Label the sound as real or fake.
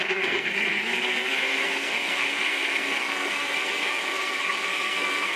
fake